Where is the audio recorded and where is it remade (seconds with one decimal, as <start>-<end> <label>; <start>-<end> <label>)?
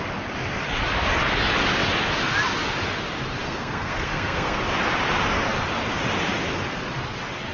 0.0-3.4 recorded; 3.4-4.6 remade; 4.6-7.5 recorded